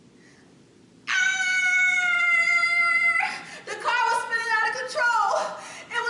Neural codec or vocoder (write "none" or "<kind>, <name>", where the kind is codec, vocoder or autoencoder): none